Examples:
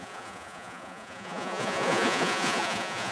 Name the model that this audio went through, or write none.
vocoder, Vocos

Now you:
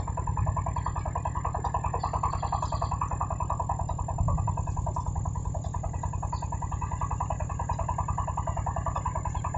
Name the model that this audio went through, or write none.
none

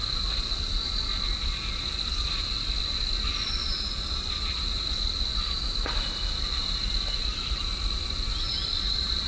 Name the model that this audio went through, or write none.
none